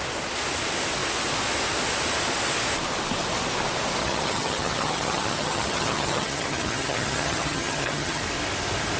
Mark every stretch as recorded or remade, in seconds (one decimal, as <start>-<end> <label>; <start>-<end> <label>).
0.0-4.0 recorded; 4.0-8.2 remade; 8.2-9.0 recorded